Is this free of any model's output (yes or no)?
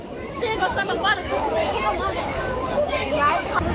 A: no